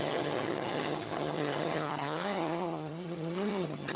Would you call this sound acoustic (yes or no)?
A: no